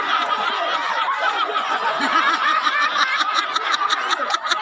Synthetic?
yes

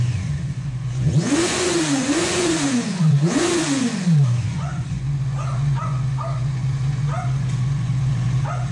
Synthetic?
yes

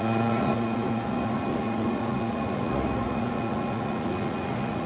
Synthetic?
yes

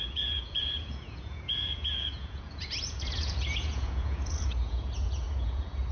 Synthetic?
yes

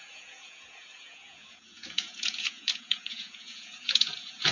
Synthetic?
yes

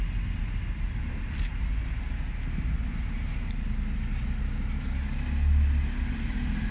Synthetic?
no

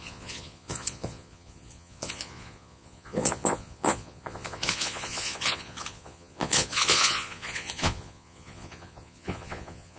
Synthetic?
yes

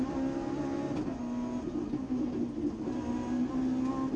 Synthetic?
no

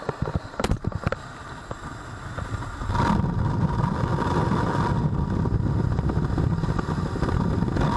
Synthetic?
no